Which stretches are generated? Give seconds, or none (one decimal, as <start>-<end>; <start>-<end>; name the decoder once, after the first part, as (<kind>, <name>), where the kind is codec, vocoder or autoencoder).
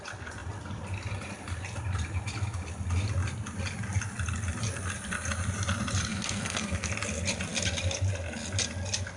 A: 6.1-6.9 (codec, SNAC)